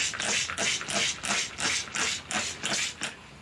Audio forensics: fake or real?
real